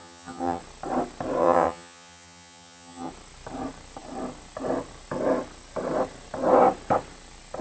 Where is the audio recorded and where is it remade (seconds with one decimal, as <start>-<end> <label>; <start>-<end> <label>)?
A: 0.0-0.6 remade; 0.6-1.4 recorded; 1.4-3.1 remade; 3.1-7.6 recorded